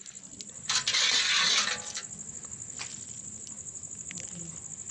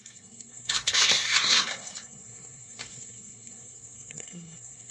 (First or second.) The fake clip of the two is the second